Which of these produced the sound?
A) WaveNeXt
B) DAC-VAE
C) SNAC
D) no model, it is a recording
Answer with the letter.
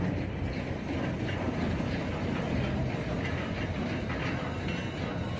D